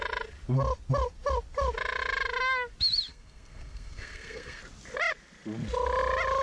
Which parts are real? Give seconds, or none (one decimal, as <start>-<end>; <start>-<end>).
0.0-3.1; 4.6-6.4